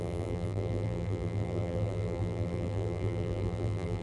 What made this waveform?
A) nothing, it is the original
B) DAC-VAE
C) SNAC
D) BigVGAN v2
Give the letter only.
D